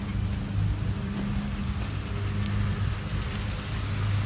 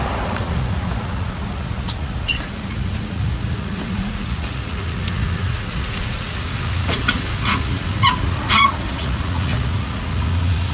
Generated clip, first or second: second